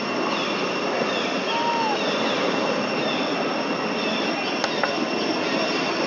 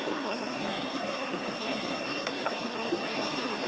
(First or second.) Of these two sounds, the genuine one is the first